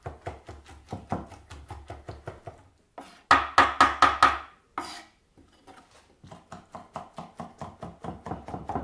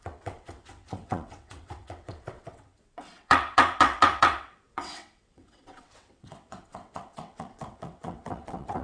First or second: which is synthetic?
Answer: second